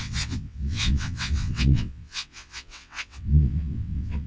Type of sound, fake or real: fake